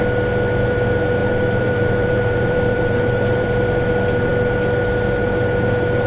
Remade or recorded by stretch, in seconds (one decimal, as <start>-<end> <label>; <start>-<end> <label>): 0.0-1.2 recorded; 1.2-3.5 remade; 3.5-6.1 recorded